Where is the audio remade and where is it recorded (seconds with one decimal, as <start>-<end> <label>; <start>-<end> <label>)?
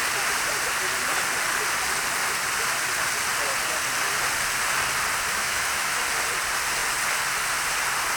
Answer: 0.0-5.3 recorded; 5.3-6.0 remade; 6.0-8.2 recorded